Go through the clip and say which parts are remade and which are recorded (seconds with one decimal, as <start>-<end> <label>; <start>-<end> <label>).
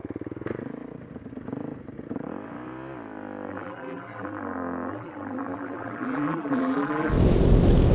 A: 0.0-3.5 recorded; 3.5-7.1 remade; 7.1-7.9 recorded